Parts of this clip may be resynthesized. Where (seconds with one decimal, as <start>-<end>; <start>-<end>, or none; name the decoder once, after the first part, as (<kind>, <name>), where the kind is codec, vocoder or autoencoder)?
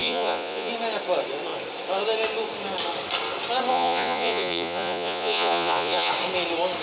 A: 0.0-0.7 (vocoder, Vocos); 3.7-6.1